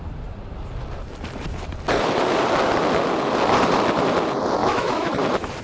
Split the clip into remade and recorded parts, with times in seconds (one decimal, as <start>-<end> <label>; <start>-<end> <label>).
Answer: 0.0-4.6 recorded; 4.6-5.1 remade; 5.1-5.6 recorded